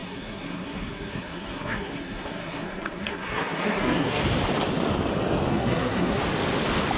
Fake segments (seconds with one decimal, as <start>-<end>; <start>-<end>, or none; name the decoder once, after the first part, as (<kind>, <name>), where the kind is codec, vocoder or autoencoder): 0.0-4.2 (codec, SNAC); 5.5-6.2